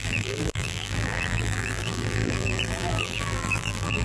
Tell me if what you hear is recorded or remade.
remade